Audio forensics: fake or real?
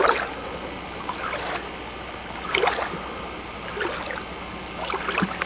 real